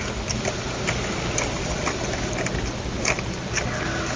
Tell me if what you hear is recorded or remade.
recorded